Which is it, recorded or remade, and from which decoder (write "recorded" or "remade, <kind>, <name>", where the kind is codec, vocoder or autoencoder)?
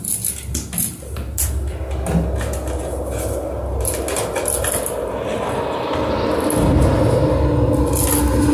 recorded